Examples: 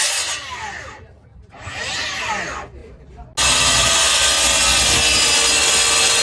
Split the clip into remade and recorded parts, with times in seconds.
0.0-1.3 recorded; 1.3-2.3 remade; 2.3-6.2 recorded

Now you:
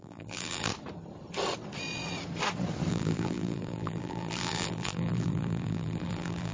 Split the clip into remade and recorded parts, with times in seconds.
0.0-0.7 remade; 0.7-2.9 recorded; 2.9-6.5 remade

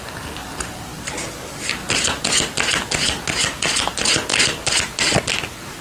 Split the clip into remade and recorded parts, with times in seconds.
0.0-0.9 recorded; 0.9-1.7 remade; 1.7-5.8 recorded

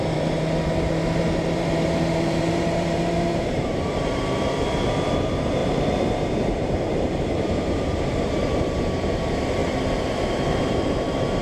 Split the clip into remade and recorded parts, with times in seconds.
0.0-9.6 remade; 9.6-10.6 recorded; 10.6-11.4 remade

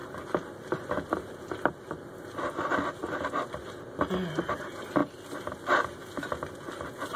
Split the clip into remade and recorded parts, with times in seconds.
0.0-7.2 recorded

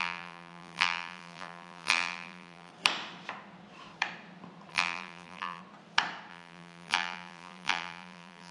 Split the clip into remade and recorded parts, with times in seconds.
0.0-2.7 remade; 2.7-4.7 recorded; 4.7-5.6 remade; 5.6-6.3 recorded; 6.3-8.5 remade

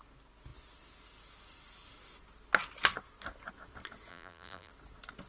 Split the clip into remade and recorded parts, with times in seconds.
0.0-4.1 recorded; 4.1-4.7 remade; 4.7-5.3 recorded

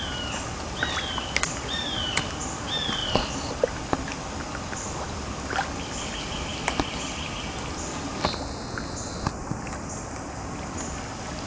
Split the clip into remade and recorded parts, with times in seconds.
0.0-3.0 recorded; 3.0-4.0 remade; 4.0-9.4 recorded; 9.4-11.0 remade; 11.0-11.5 recorded